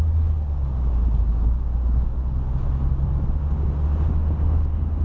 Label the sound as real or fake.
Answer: real